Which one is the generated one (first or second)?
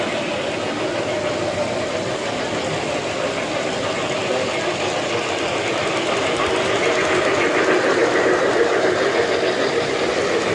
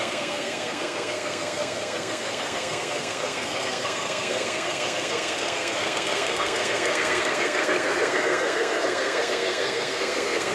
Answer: second